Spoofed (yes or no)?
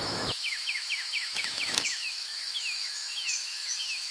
yes